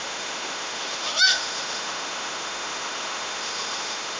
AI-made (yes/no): yes